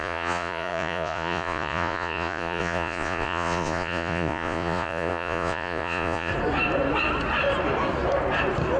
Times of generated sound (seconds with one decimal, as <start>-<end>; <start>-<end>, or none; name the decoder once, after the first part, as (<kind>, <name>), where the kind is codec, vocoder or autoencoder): 0.0-6.3 (vocoder, Vocos)